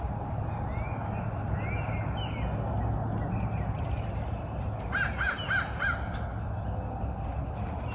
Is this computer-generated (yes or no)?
no